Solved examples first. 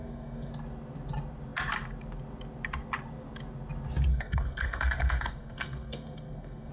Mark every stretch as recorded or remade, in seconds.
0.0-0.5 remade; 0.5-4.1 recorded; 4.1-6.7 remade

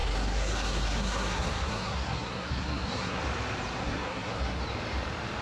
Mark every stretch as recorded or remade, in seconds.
0.0-3.2 remade; 3.2-3.8 recorded; 3.8-4.6 remade; 4.6-5.4 recorded

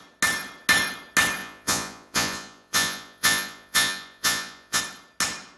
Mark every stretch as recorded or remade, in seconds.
0.0-1.4 recorded; 1.4-4.8 remade; 4.8-5.6 recorded